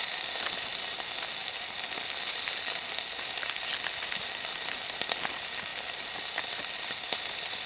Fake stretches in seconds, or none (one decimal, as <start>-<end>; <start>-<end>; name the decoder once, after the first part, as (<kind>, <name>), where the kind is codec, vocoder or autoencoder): none